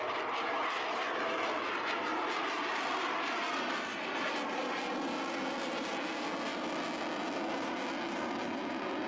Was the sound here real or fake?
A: real